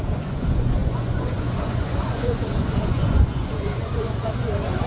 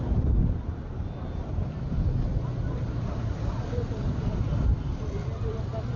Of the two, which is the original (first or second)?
second